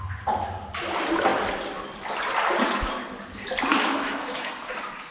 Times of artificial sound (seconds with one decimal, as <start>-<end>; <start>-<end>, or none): 3.7-4.5